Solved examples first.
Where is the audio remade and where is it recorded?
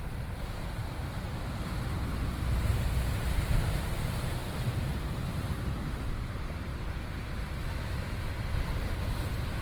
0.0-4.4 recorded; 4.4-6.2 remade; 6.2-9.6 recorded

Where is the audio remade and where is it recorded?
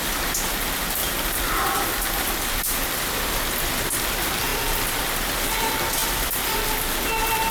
0.0-1.0 recorded; 1.0-3.6 remade; 3.6-6.0 recorded; 6.0-6.6 remade; 6.6-7.5 recorded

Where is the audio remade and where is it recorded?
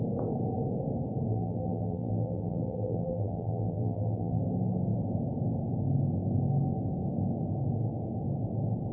0.0-1.3 recorded; 1.3-4.4 remade; 4.4-8.9 recorded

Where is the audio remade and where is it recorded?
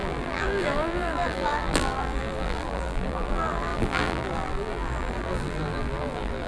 0.0-6.5 remade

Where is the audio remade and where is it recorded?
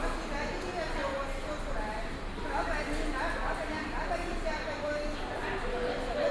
0.0-1.0 recorded; 1.0-2.5 remade; 2.5-4.5 recorded; 4.5-6.3 remade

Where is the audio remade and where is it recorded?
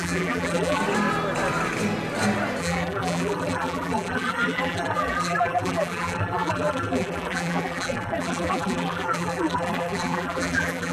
0.0-0.8 remade; 0.8-2.6 recorded; 2.6-10.9 remade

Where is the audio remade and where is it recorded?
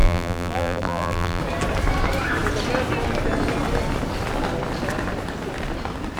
0.0-1.4 remade; 1.4-6.2 recorded